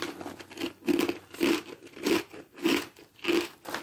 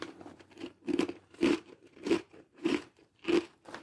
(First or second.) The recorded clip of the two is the first